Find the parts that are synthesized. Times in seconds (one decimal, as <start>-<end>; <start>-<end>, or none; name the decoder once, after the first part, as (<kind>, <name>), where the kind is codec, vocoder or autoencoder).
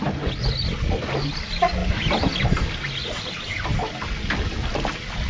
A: none